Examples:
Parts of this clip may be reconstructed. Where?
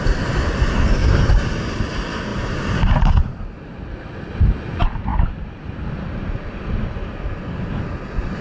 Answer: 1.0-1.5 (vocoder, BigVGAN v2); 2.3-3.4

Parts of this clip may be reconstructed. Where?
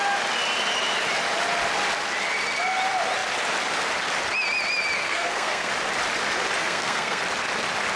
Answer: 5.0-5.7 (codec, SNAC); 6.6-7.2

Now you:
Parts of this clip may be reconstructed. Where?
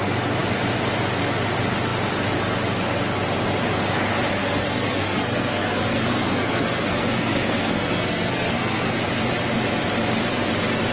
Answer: 4.4-9.0 (codec, SNAC)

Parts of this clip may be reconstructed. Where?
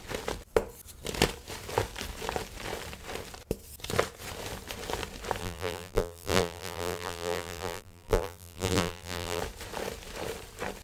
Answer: 5.4-9.4 (vocoder, BigVGAN v2)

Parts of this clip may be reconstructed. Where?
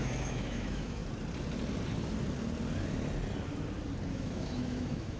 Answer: 0.0-1.0 (autoencoder, DAC-VAE); 4.1-5.2